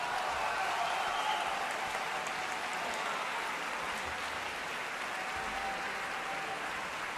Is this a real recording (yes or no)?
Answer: yes